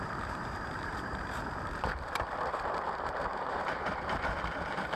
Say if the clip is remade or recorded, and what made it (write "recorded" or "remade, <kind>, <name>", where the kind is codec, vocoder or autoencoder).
remade, vocoder, BigVGAN v2